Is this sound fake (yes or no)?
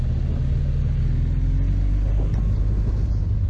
no